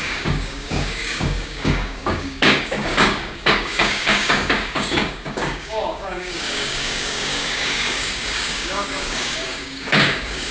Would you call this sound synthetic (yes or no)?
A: yes